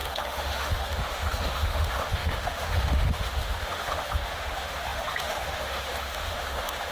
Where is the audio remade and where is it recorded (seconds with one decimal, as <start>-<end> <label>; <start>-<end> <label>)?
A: 0.0-6.9 remade

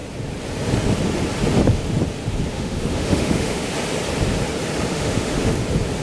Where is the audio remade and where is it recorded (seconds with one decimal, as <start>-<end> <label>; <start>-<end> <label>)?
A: 0.0-2.5 recorded; 2.5-3.7 remade; 3.7-4.9 recorded; 4.9-5.5 remade; 5.5-6.0 recorded